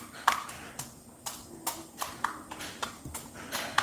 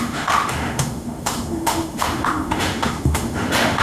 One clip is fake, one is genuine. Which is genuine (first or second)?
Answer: first